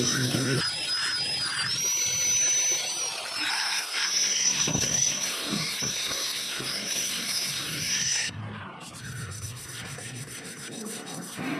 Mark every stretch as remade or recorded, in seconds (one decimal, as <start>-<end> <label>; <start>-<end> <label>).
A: 0.0-0.6 remade; 0.6-3.5 recorded; 3.5-8.4 remade; 8.4-9.0 recorded; 9.0-11.6 remade